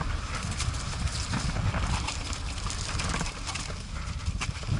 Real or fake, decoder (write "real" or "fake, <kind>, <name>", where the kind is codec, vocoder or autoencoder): real